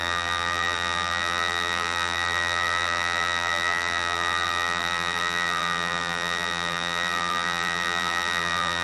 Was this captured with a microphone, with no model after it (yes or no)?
no